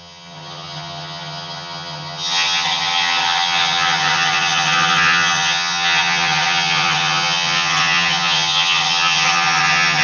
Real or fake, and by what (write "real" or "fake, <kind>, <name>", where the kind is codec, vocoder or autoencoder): fake, vocoder, HiFi-GAN